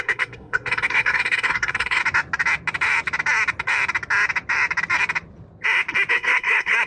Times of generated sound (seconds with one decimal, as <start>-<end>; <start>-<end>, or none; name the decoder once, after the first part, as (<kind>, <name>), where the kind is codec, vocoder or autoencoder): 0.0-2.0 (codec, SNAC); 6.1-6.9